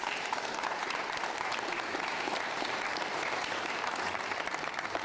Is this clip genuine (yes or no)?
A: no